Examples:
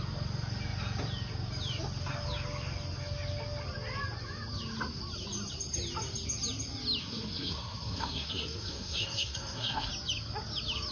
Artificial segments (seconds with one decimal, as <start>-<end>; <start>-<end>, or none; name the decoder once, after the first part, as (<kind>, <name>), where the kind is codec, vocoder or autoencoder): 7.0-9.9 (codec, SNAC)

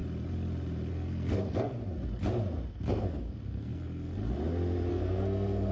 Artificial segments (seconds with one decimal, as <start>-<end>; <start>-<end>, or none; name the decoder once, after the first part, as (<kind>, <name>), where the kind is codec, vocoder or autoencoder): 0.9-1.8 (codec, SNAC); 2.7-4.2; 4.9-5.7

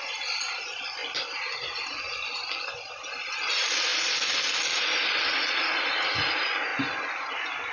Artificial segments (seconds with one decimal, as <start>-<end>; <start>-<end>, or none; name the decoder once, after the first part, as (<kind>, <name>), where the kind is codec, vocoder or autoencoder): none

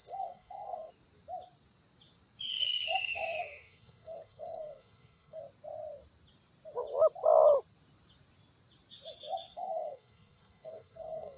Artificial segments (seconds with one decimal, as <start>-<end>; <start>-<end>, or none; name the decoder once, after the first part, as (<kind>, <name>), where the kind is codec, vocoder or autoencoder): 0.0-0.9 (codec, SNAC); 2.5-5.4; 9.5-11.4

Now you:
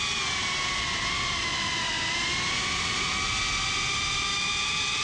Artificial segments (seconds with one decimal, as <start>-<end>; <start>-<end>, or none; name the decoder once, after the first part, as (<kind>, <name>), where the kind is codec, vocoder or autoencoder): none